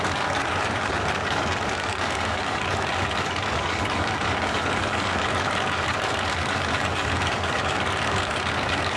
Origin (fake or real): fake